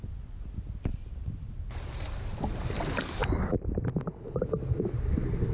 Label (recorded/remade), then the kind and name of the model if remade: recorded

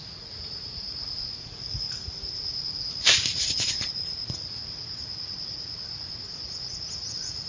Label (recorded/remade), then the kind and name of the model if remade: remade, vocoder, Vocos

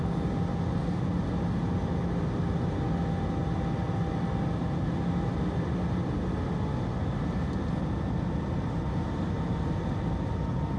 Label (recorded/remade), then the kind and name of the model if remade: recorded